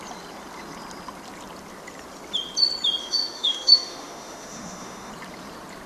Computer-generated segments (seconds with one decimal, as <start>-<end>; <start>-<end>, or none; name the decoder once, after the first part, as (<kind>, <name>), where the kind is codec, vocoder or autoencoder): 3.0-5.1 (autoencoder, DAC-VAE)